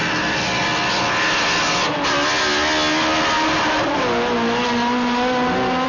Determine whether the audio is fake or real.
real